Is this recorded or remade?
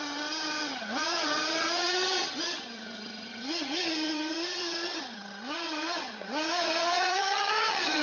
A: remade